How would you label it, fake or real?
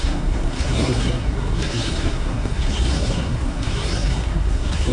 fake